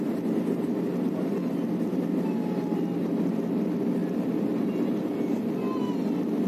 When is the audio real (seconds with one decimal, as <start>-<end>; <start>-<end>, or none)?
0.0-6.5